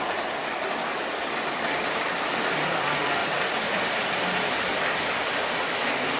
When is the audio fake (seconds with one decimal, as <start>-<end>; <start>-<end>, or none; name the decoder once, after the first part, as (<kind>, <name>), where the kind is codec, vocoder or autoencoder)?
3.2-3.8 (vocoder, BigVGAN v2)